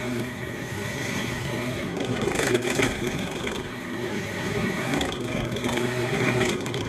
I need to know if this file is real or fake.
fake